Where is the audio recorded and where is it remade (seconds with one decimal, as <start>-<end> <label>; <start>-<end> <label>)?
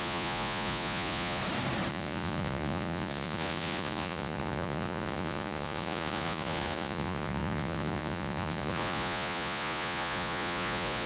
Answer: 0.0-1.4 remade; 1.4-1.9 recorded; 1.9-11.1 remade